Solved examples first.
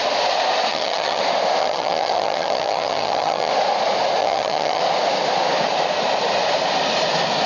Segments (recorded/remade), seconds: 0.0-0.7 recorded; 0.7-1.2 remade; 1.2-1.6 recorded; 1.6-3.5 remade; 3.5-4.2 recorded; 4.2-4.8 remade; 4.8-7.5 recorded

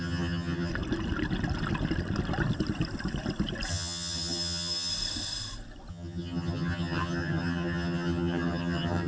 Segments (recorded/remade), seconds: 0.0-0.7 remade; 0.7-3.7 recorded; 3.7-4.9 remade; 4.9-5.9 recorded; 5.9-9.1 remade

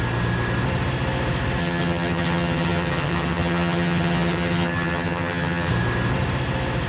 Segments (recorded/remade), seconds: 0.0-1.6 recorded; 1.6-5.7 remade; 5.7-6.9 recorded

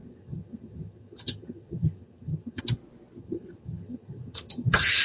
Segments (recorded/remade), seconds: 0.0-2.6 remade; 2.6-3.2 recorded; 3.2-5.0 remade

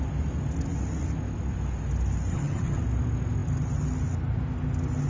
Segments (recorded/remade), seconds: 0.0-2.3 recorded; 2.3-2.8 remade; 2.8-5.1 recorded